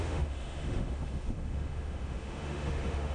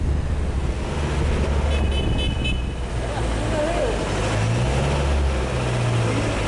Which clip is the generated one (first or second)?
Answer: first